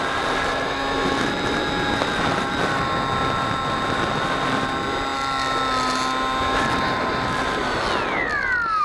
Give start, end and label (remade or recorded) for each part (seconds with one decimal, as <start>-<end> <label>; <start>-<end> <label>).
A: 0.0-8.8 recorded